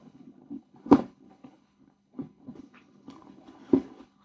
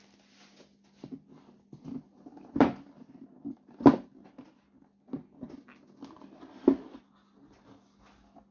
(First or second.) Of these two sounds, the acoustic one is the second